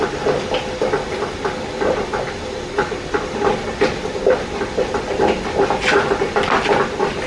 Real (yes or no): yes